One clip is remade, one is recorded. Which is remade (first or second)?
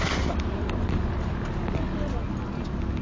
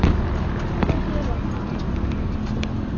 second